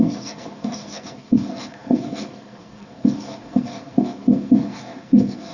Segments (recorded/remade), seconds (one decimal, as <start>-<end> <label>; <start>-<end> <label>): 0.0-5.5 remade